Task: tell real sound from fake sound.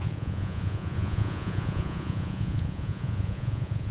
fake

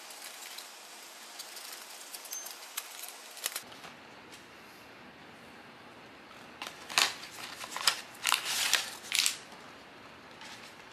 real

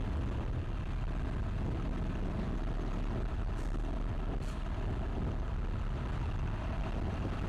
real